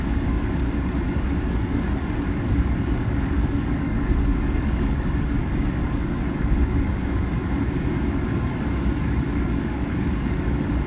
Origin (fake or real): fake